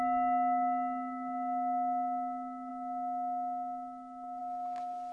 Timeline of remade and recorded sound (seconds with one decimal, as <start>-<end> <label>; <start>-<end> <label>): 0.0-5.1 recorded